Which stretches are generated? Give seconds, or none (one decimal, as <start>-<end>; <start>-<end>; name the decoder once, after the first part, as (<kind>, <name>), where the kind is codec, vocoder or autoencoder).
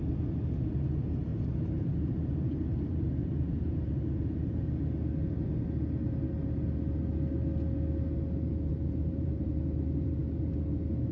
1.3-4.2 (vocoder, BigVGAN v2); 8.7-9.5